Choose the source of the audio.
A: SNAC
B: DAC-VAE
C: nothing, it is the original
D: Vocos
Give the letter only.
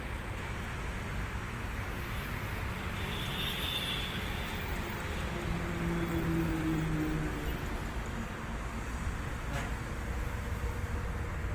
C